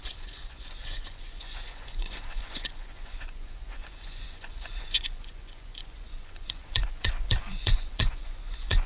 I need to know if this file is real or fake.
fake